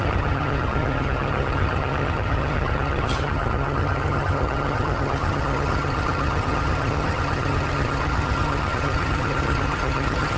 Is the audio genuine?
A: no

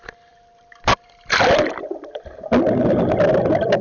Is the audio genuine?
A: no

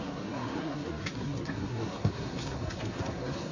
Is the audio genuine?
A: no